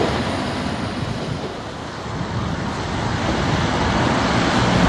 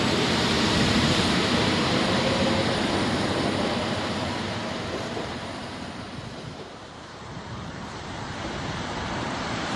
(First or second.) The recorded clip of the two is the first